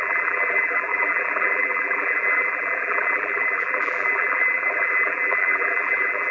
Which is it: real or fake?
fake